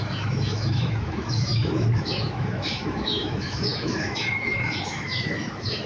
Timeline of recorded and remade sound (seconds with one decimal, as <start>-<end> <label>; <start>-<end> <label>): 0.0-5.9 remade